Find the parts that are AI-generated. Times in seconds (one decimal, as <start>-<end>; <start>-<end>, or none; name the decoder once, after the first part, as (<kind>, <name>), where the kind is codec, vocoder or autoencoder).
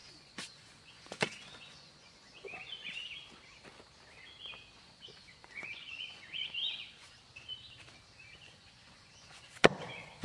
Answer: 0.0-3.0 (vocoder, Vocos); 4.8-7.2; 8.4-10.2